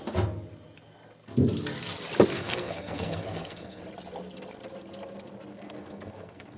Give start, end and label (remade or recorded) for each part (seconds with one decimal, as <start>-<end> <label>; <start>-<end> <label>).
0.0-2.3 recorded; 2.3-3.8 remade; 3.8-5.5 recorded; 5.5-6.6 remade

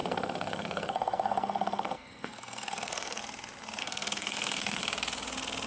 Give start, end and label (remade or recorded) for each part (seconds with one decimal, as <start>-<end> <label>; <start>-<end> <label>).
0.0-3.2 remade; 3.2-3.8 recorded; 3.8-4.8 remade; 4.8-5.7 recorded

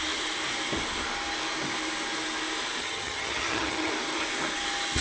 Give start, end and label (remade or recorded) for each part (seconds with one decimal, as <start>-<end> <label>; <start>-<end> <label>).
0.0-2.8 recorded; 2.8-3.9 remade; 3.9-5.0 recorded

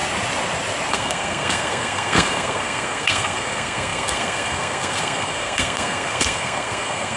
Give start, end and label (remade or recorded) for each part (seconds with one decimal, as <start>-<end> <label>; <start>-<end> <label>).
0.0-0.9 recorded; 0.9-7.2 remade